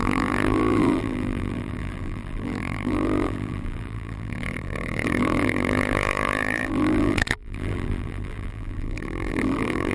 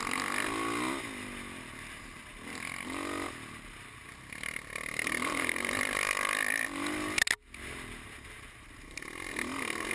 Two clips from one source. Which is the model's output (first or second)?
first